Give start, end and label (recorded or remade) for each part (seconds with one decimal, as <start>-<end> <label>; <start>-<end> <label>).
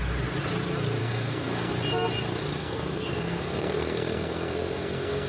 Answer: 0.0-1.0 recorded; 1.0-1.7 remade; 1.7-2.6 recorded; 2.6-5.3 remade